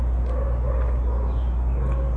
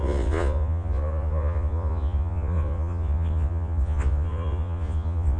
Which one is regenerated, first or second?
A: second